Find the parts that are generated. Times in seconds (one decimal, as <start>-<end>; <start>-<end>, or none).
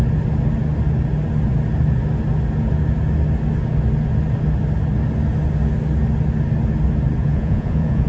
7.2-8.1